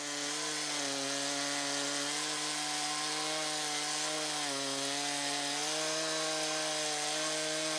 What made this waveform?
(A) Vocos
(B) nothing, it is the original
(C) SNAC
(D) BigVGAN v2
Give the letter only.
B